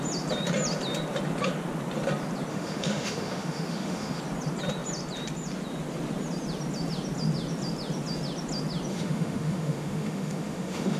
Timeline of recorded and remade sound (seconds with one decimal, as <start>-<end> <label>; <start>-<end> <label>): 0.0-2.5 recorded; 2.5-4.2 remade; 4.2-8.9 recorded; 8.9-11.0 remade